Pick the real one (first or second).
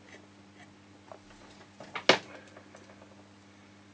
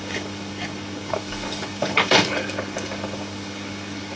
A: first